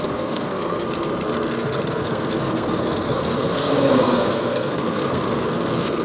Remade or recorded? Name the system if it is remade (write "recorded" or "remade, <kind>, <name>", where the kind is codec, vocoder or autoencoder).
remade, codec, SNAC